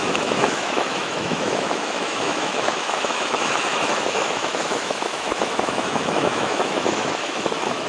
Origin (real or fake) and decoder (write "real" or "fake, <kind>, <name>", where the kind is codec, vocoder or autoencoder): fake, autoencoder, DAC-VAE